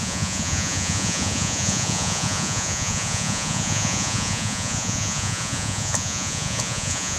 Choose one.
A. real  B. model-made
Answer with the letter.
B